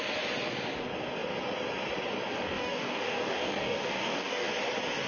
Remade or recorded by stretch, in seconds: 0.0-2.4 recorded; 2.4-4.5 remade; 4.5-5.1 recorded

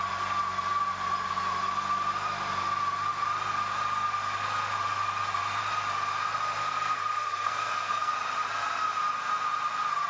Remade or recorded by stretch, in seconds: 0.0-6.6 recorded; 6.6-8.1 remade; 8.1-10.1 recorded